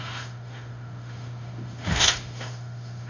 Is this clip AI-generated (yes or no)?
yes